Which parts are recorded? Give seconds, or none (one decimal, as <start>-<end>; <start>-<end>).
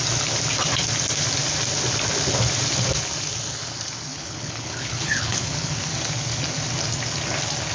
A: 0.0-4.1; 5.7-7.7